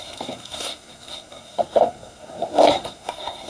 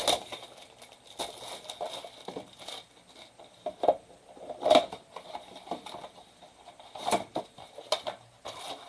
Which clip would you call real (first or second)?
second